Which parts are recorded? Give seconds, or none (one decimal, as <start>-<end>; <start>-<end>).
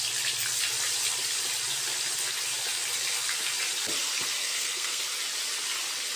0.0-4.4; 5.0-6.2